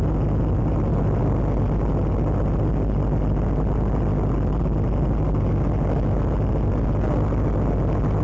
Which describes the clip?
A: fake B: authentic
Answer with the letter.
B